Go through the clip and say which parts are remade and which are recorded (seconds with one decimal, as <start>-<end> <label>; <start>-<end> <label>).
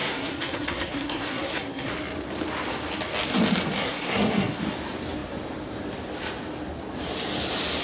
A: 0.0-1.9 remade; 1.9-3.8 recorded; 3.8-4.6 remade; 4.6-7.8 recorded